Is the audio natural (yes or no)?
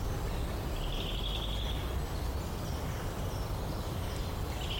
yes